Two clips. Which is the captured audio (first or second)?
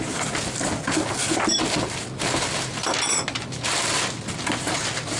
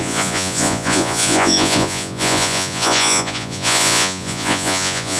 first